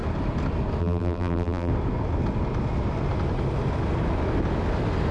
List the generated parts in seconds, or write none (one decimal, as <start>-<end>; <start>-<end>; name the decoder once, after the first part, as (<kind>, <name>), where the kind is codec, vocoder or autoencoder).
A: 0.8-1.7 (vocoder, BigVGAN v2)